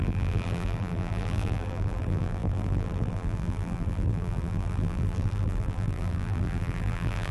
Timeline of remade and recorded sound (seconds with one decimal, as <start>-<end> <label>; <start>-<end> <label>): 0.0-7.3 remade

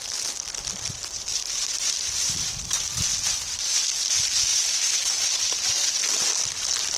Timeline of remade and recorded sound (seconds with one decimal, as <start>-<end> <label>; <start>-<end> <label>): 0.0-1.3 recorded; 1.3-2.3 remade; 2.3-7.0 recorded

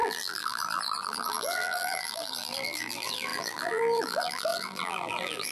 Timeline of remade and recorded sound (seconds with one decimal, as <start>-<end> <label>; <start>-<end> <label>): 0.0-5.5 remade

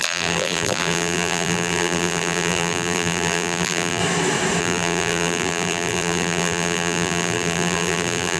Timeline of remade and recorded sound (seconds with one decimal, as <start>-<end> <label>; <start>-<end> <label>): 0.0-4.0 remade; 4.0-4.6 recorded; 4.6-8.4 remade

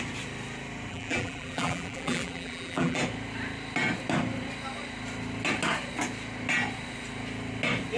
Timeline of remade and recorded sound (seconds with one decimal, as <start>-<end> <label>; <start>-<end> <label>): 0.0-0.9 recorded; 0.9-3.0 remade; 3.0-8.0 recorded

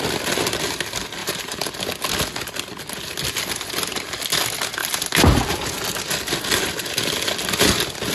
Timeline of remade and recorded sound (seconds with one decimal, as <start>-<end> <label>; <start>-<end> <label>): 0.0-1.2 recorded; 1.2-1.7 remade; 1.7-8.1 recorded

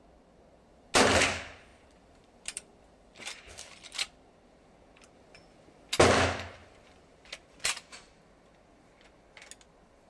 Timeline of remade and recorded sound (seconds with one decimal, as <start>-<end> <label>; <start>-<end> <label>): 0.0-1.7 recorded; 1.7-5.1 remade; 5.1-6.6 recorded; 6.6-8.2 remade; 8.2-10.1 recorded

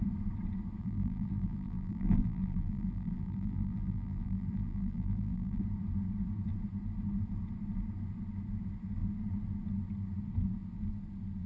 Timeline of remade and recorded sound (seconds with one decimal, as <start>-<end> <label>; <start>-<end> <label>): 0.0-0.8 recorded; 0.8-5.6 remade; 5.6-11.5 recorded